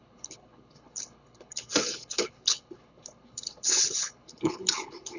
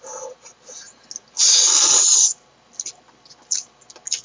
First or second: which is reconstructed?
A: first